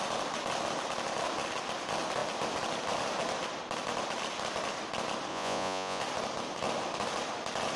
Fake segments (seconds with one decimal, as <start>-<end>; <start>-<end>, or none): 5.3-6.0